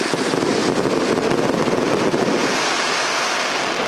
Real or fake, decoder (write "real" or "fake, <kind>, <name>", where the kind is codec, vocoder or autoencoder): real